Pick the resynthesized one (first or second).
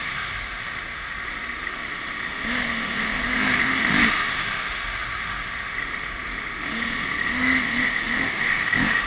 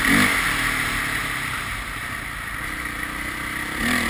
first